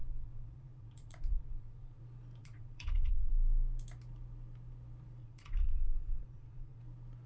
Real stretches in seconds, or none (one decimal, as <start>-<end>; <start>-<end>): 2.0-2.4; 3.3-5.2; 6.8-7.3